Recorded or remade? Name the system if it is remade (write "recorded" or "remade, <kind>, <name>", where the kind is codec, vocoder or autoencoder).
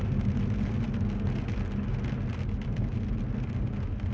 recorded